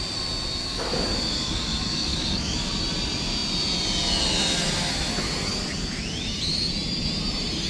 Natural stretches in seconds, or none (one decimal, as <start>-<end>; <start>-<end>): 0.0-0.6; 2.7-7.7